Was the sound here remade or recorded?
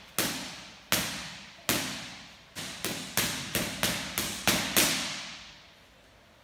recorded